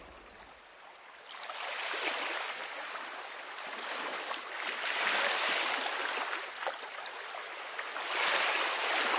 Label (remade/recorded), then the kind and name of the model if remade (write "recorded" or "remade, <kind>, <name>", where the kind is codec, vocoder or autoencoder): recorded